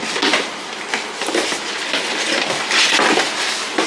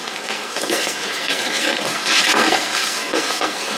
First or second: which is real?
first